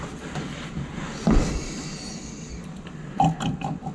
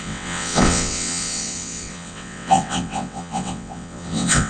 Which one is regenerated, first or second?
second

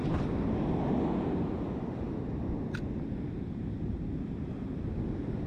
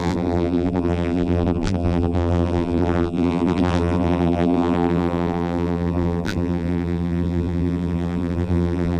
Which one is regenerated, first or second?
second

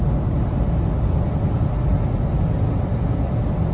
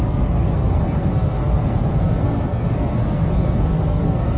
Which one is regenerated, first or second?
second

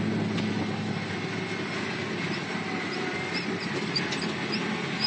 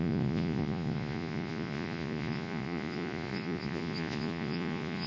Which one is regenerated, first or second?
second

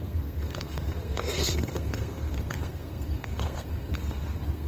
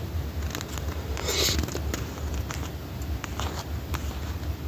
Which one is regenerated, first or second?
first